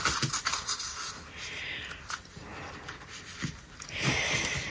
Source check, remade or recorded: recorded